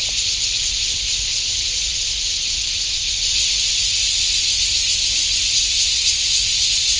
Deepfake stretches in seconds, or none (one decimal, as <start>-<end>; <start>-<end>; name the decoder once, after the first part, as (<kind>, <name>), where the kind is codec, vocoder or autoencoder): none